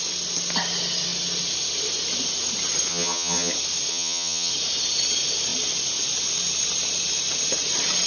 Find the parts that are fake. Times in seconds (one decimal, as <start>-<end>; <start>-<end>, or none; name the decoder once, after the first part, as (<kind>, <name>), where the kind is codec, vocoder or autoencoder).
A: 2.9-3.5 (vocoder, HiFi-GAN); 3.9-4.5